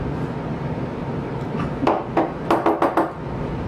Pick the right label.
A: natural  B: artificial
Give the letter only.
A